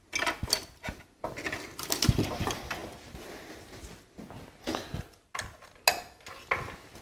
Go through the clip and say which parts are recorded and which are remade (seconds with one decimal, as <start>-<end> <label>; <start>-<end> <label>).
0.0-7.0 recorded